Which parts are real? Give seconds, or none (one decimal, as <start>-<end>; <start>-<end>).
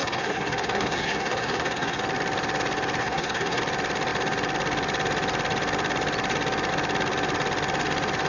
2.0-3.0; 3.6-8.3